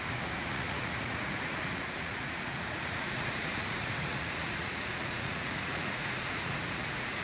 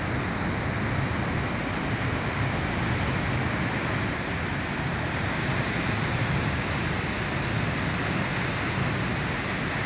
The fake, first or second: first